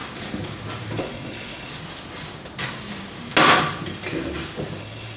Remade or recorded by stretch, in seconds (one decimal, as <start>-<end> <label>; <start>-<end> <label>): 0.0-1.0 recorded; 1.0-1.7 remade; 1.7-4.8 recorded; 4.8-5.2 remade